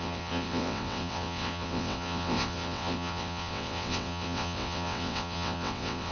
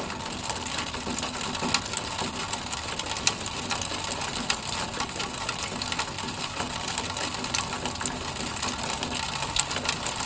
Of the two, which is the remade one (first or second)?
first